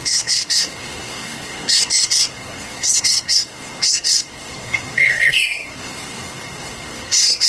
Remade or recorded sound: remade